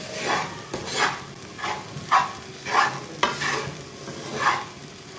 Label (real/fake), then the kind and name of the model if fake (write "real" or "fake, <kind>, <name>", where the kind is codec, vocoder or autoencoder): real